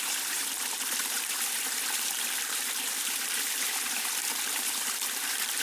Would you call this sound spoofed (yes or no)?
yes